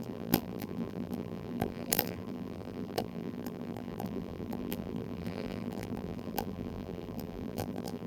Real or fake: fake